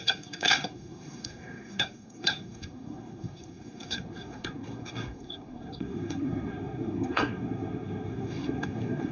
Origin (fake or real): fake